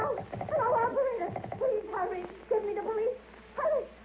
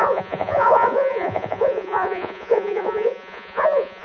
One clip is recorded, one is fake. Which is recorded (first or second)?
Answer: first